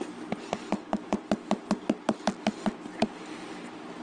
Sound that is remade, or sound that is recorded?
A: recorded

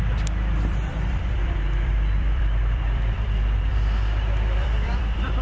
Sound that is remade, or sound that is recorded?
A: remade